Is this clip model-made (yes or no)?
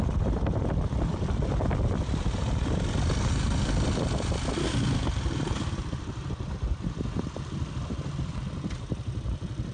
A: yes